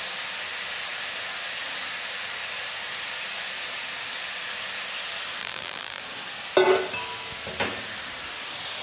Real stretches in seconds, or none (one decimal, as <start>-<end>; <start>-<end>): 0.0-5.4; 6.0-8.8